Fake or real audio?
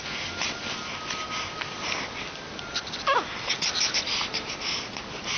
real